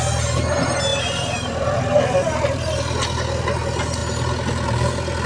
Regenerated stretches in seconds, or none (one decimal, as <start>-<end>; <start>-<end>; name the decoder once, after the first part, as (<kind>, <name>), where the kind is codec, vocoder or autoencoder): 0.9-2.6 (vocoder, BigVGAN v2)